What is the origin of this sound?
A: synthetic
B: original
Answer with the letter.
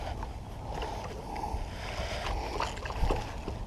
B